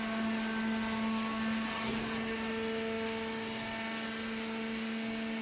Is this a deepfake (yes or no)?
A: no